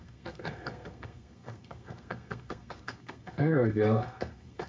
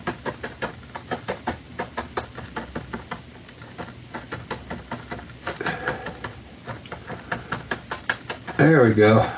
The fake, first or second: first